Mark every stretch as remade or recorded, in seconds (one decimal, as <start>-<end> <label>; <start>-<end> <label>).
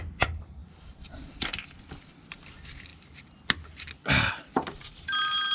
0.0-5.5 recorded